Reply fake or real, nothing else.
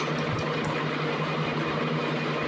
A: real